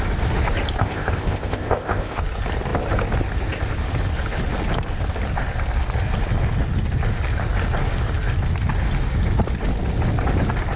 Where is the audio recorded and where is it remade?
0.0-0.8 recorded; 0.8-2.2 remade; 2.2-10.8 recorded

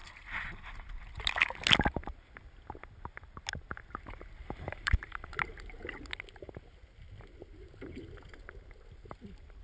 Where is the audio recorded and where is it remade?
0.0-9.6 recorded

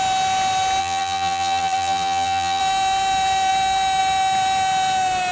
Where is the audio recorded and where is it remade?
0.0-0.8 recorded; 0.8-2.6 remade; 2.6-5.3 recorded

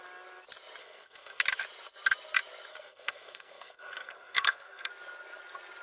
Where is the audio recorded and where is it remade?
0.0-0.8 recorded; 0.8-1.4 remade; 1.4-2.7 recorded; 2.7-4.9 remade; 4.9-5.8 recorded